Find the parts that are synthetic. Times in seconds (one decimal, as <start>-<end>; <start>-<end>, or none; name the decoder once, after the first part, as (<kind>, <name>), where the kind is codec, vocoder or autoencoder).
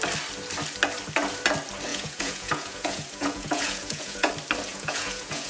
1.9-4.3 (vocoder, Vocos); 4.7-5.5